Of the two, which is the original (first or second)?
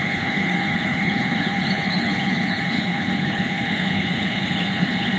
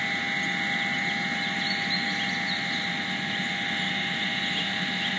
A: second